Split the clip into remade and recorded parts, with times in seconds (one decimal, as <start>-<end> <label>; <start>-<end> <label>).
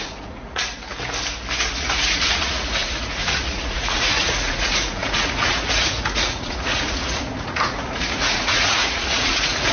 0.0-0.6 remade; 0.6-1.8 recorded; 1.8-9.7 remade